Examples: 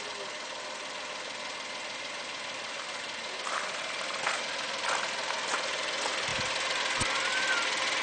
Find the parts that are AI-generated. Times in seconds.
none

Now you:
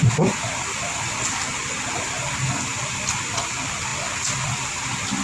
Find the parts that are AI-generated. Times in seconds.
none

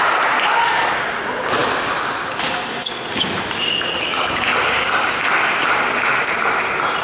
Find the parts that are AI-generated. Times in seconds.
none

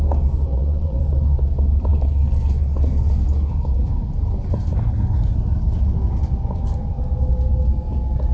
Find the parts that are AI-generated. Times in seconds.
0.5-1.0

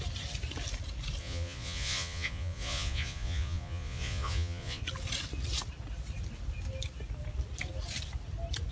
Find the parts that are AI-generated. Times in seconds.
1.2-4.8

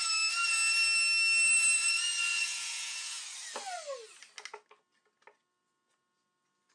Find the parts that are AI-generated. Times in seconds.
1.8-3.2